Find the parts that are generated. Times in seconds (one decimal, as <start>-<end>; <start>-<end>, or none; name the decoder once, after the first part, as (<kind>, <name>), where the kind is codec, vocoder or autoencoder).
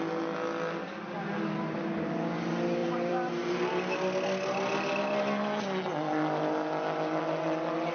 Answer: none